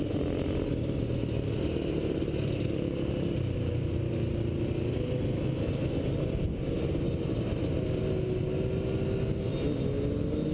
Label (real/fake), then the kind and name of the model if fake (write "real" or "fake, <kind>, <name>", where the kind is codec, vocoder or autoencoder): real